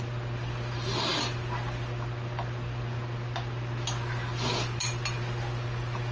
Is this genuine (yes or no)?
yes